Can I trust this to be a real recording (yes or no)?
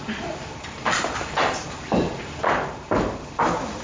yes